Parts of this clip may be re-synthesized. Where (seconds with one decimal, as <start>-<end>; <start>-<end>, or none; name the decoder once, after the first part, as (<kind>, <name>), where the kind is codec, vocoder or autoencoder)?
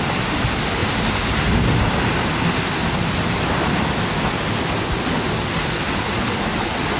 none